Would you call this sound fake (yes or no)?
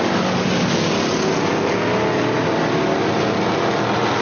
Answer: no